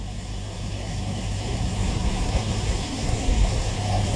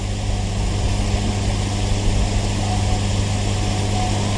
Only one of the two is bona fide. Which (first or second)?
second